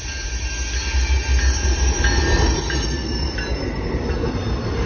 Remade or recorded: recorded